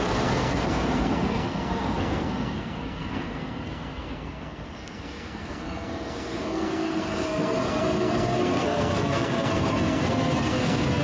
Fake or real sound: fake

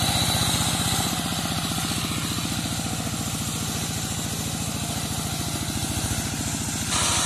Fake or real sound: real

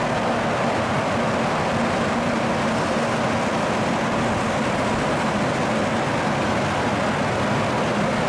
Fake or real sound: real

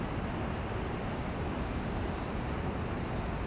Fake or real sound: real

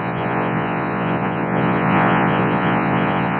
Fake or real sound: fake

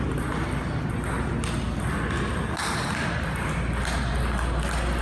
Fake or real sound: real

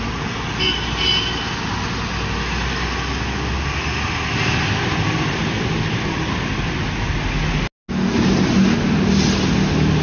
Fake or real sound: real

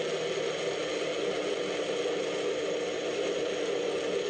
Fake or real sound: real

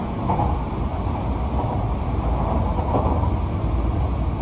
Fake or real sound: real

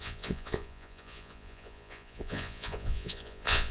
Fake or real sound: fake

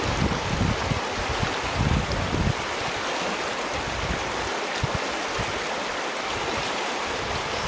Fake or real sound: real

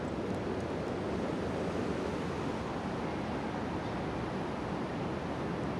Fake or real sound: real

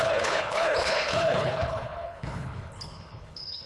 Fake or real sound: fake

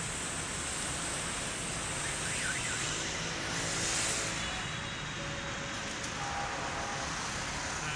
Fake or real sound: real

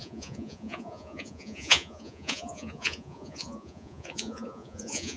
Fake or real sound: fake